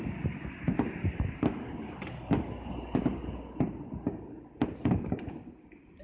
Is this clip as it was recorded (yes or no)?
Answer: yes